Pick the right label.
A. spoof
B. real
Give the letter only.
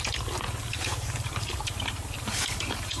A